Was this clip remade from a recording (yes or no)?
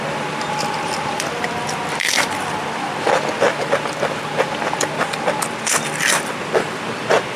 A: yes